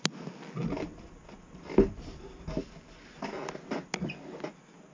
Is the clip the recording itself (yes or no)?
yes